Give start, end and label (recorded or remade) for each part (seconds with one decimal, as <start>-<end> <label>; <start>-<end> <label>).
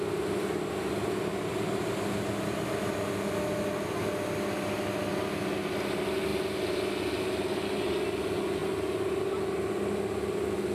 0.0-10.7 recorded